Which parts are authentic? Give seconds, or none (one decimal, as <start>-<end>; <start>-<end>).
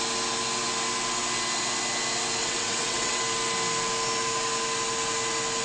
0.0-2.4; 3.2-5.6